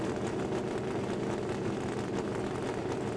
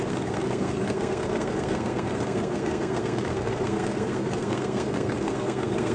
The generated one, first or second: second